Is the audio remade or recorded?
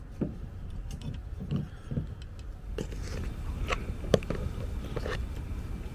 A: recorded